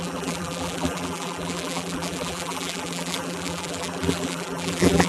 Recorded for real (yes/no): no